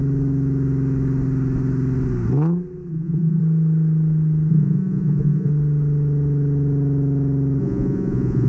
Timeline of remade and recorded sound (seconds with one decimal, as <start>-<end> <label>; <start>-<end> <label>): 0.0-2.9 recorded; 2.9-3.4 remade; 3.4-4.5 recorded; 4.5-5.5 remade; 5.5-7.6 recorded; 7.6-8.5 remade